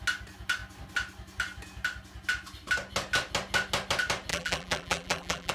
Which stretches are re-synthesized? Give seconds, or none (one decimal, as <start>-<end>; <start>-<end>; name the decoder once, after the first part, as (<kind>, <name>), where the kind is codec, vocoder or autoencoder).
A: 4.3-5.5 (vocoder, BigVGAN v2)